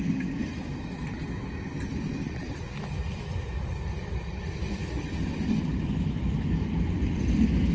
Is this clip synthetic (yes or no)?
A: no